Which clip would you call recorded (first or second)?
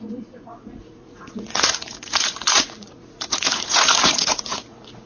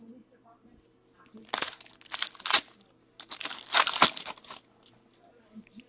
second